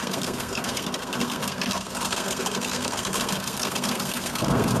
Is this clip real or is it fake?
fake